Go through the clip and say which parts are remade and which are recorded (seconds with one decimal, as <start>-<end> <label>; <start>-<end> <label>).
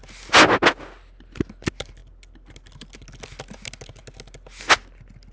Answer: 0.0-5.3 recorded